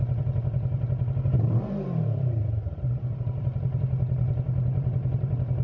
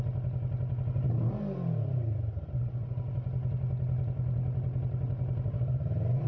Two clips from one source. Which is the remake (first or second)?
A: first